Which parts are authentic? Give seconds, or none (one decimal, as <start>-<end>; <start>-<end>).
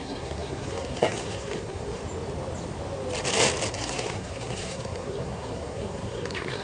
2.0-3.7